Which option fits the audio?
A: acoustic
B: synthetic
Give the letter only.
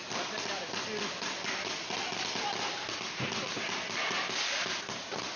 A